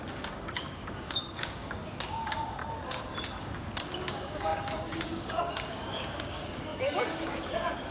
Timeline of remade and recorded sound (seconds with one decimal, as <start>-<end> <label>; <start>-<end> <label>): 0.0-2.6 remade; 2.6-3.4 recorded; 3.4-7.9 remade